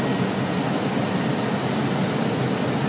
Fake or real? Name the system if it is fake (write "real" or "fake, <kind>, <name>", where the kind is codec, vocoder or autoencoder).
real